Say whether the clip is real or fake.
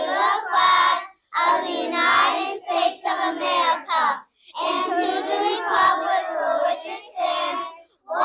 real